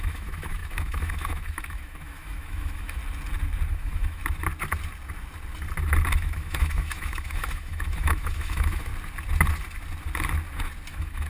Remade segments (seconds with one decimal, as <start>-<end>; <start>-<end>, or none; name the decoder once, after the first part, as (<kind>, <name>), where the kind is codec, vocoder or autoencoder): 0.0-3.0 (autoencoder, DAC-VAE); 3.7-4.2; 6.2-8.9; 10.9-11.3